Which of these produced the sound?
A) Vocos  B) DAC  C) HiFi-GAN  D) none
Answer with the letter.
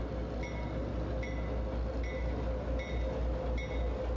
D